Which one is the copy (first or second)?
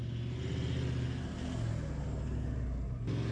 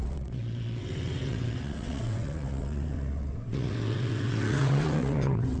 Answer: second